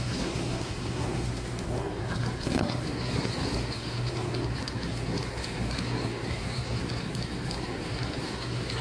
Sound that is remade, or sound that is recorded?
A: remade